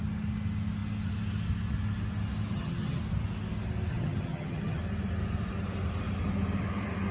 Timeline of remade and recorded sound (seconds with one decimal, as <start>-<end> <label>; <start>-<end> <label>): 0.0-2.5 recorded; 2.5-3.0 remade; 3.0-3.9 recorded; 3.9-4.8 remade; 4.8-7.1 recorded